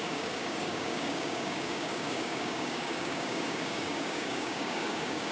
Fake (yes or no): yes